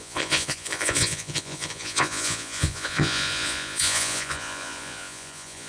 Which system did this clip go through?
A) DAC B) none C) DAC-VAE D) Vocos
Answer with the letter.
D